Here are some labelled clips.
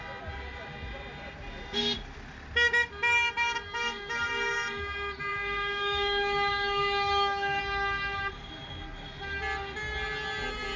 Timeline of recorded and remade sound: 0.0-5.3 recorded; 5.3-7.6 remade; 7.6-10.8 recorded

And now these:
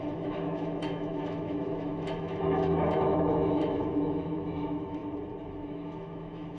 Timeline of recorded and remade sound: 0.0-5.0 remade; 5.0-5.5 recorded; 5.5-6.6 remade